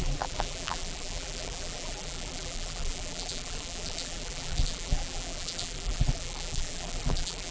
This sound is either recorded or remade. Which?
remade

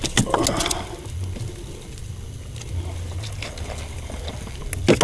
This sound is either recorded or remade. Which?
recorded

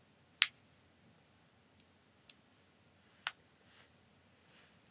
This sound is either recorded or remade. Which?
recorded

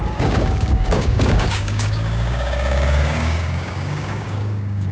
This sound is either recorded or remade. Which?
remade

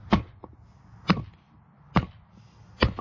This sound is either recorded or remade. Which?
recorded